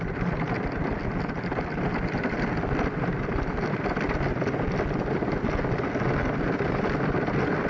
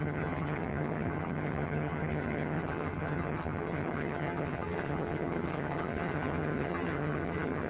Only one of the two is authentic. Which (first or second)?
first